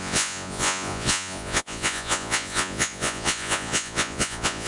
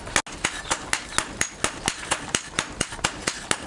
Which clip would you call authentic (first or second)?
second